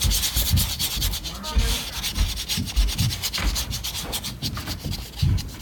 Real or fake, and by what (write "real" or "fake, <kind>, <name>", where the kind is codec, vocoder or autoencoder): real